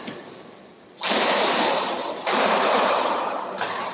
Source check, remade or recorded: recorded